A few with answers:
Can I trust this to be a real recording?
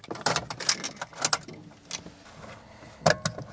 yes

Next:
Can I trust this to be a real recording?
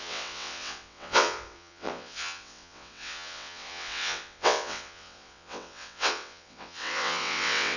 no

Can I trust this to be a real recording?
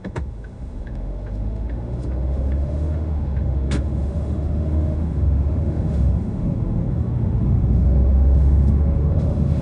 no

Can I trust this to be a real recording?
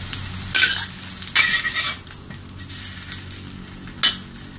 yes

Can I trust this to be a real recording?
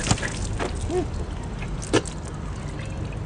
yes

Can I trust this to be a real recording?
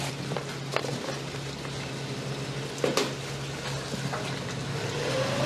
yes